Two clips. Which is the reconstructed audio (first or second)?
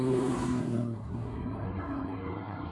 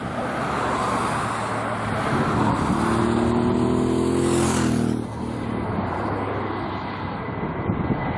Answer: first